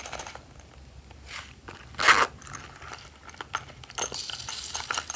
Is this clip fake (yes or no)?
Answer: no